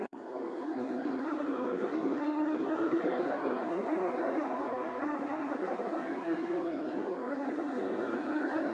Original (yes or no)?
no